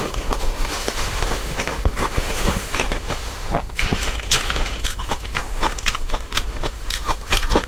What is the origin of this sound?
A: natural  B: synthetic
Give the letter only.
B